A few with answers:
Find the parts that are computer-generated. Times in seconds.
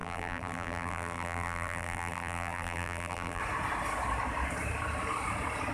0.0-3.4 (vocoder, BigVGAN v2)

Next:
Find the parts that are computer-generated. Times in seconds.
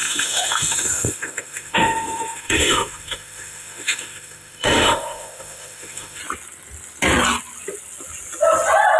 0.0-6.2 (autoencoder, DAC-VAE)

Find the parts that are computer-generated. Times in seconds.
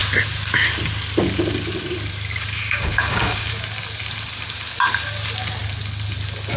2.6-3.5 (codec, DAC)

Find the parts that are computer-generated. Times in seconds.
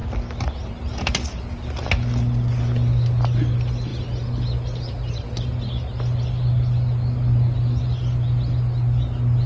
none